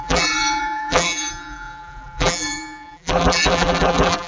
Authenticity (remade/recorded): remade